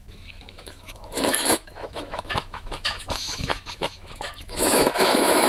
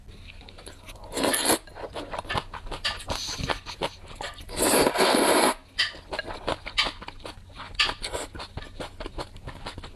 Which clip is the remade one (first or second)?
first